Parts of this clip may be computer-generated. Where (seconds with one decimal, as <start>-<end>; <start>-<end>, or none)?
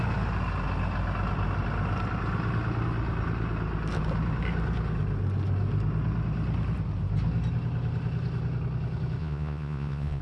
9.2-10.2